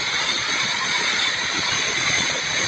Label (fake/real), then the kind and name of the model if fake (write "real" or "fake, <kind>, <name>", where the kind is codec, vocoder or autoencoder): fake, vocoder, Vocos